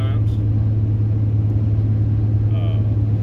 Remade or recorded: recorded